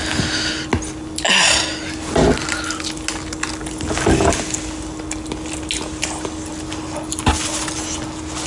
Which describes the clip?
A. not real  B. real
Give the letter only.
B